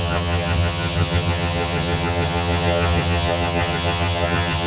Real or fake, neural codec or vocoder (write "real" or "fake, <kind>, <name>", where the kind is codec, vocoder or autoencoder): fake, vocoder, HiFi-GAN